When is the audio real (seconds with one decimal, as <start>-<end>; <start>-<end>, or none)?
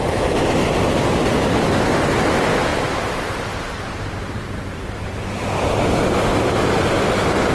0.0-2.7; 5.3-7.5